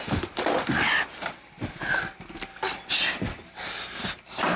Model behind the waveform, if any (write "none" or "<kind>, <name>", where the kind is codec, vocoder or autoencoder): vocoder, BigVGAN v2